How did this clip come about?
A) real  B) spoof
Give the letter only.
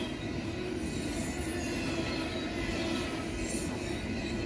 A